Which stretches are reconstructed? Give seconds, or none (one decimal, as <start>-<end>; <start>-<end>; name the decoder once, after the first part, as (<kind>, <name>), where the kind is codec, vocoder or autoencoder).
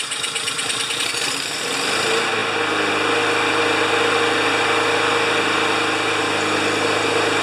none